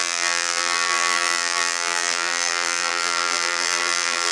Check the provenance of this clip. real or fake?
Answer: fake